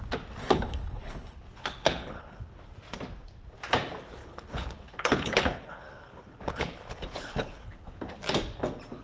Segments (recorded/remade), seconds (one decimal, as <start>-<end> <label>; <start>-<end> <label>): 0.0-0.4 recorded; 0.4-2.6 remade; 2.6-4.2 recorded; 4.2-8.1 remade; 8.1-9.0 recorded